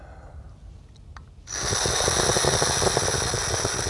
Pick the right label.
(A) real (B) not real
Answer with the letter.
A